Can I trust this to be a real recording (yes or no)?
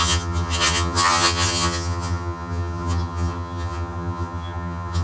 no